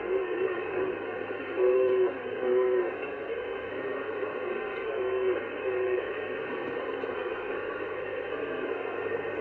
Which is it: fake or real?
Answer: fake